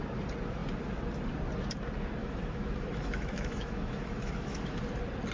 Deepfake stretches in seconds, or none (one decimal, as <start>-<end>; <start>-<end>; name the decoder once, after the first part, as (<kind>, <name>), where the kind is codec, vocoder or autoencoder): 2.2-4.8 (autoencoder, DAC-VAE)